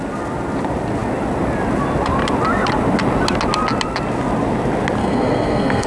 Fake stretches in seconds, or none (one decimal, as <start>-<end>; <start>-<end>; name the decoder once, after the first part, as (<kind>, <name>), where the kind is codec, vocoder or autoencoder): 5.0-5.9 (codec, SNAC)